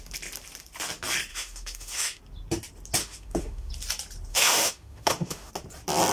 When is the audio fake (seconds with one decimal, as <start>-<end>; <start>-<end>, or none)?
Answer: 1.3-2.2; 3.0-3.7; 4.3-5.5